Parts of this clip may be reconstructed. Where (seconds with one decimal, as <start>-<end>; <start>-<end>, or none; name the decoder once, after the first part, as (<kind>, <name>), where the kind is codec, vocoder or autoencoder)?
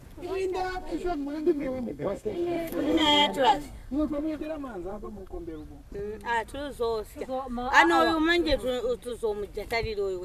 0.6-4.4 (codec, SNAC); 4.9-5.4